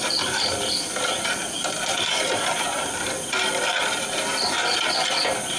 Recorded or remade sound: recorded